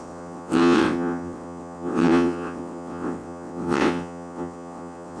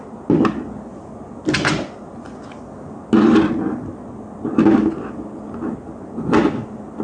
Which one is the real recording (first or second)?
second